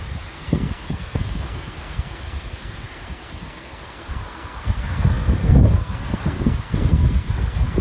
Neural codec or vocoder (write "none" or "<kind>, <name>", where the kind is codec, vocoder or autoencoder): codec, SNAC